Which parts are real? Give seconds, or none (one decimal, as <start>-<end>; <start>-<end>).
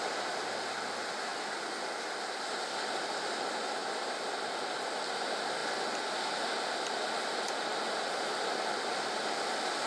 0.0-3.8; 4.3-7.7